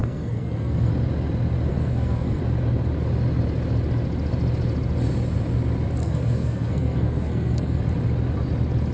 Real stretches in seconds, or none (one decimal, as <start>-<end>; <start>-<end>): 0.9-1.7; 2.4-6.0; 7.8-8.9